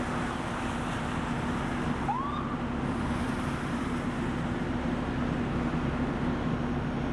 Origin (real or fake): real